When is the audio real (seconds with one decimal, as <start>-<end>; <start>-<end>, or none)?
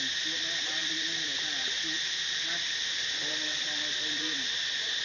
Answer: 0.0-5.0